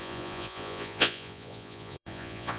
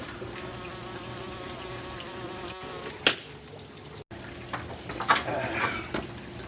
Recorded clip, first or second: second